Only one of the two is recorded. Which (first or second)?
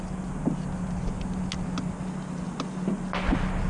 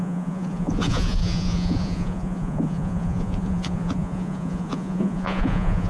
first